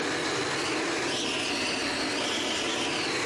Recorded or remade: recorded